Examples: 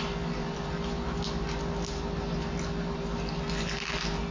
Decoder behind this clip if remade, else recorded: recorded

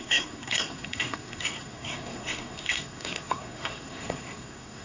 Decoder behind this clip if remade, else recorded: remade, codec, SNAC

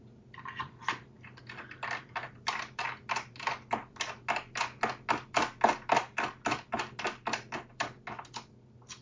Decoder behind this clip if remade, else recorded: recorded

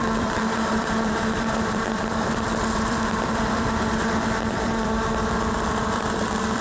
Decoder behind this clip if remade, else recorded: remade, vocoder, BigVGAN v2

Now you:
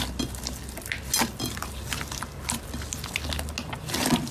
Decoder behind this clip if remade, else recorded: recorded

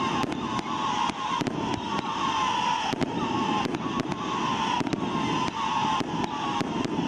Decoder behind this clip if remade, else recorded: recorded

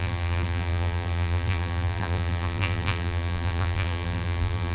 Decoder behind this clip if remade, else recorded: remade, vocoder, BigVGAN v2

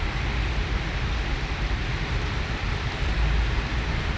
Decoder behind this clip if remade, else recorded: recorded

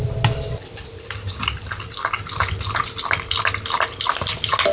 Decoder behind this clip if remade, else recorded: recorded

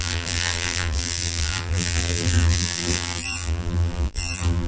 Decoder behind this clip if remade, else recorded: remade, vocoder, BigVGAN v2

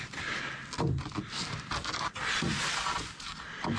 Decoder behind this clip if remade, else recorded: recorded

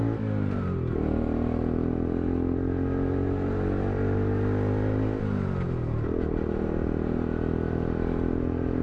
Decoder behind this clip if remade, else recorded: recorded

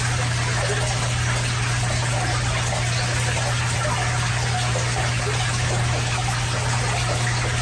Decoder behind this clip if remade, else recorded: recorded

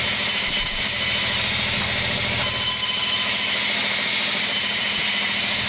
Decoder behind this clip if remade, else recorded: recorded